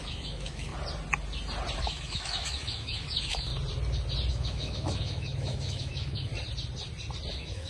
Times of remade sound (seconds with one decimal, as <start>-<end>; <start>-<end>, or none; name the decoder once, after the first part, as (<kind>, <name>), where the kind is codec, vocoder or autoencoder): 0.0-0.7 (autoencoder, DAC-VAE); 1.8-3.5; 4.3-6.3; 7.3-7.7